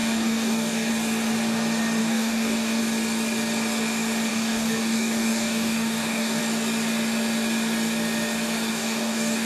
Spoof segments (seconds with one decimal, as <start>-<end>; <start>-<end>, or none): 0.0-0.9; 2.0-2.8; 4.3-6.4; 8.7-9.5